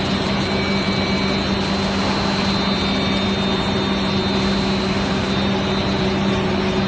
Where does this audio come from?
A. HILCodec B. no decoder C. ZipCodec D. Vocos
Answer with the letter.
B